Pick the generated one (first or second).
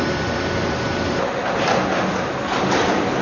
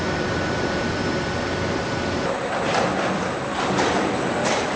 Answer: second